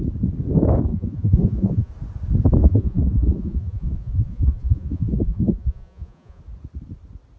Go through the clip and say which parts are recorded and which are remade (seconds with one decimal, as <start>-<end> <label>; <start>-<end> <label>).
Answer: 0.0-0.9 recorded; 0.9-1.9 remade; 1.9-2.6 recorded; 2.6-6.4 remade; 6.4-7.4 recorded